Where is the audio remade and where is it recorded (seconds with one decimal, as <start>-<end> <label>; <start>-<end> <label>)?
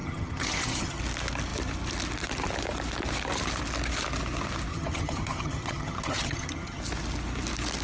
0.0-1.0 remade; 1.0-4.7 recorded; 4.7-6.8 remade; 6.8-7.8 recorded